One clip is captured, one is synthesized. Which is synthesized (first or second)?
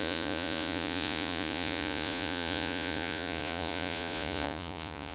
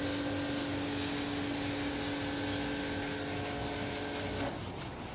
first